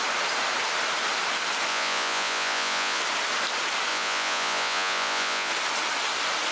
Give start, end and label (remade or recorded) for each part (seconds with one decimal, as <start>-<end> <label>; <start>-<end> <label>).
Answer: 0.0-1.7 recorded; 1.7-3.0 remade; 3.0-3.9 recorded; 3.9-5.5 remade; 5.5-6.5 recorded